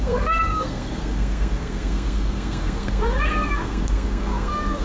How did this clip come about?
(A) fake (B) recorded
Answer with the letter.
A